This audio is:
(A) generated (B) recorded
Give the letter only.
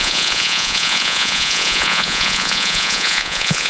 A